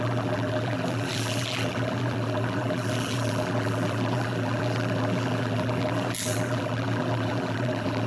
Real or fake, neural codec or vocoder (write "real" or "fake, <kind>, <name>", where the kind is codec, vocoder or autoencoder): fake, vocoder, BigVGAN v2